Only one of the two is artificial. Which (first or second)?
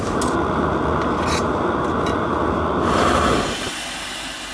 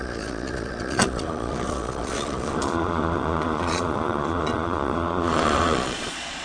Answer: second